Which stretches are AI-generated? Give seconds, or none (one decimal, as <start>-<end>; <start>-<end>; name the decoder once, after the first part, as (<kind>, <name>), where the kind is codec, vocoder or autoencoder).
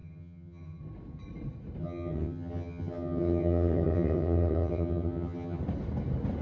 0.0-0.8 (vocoder, HiFi-GAN); 1.8-5.6